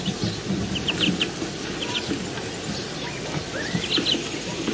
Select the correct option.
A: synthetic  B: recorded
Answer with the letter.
B